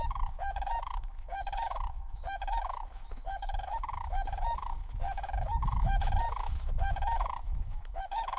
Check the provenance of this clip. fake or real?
fake